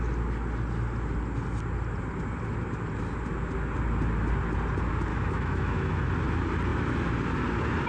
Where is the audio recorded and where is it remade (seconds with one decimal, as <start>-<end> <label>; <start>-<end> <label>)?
0.0-5.1 recorded; 5.1-6.1 remade; 6.1-7.9 recorded